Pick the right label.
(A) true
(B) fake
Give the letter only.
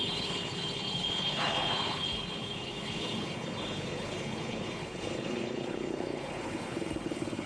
B